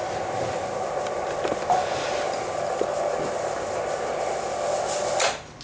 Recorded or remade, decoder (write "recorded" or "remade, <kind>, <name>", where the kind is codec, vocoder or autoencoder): recorded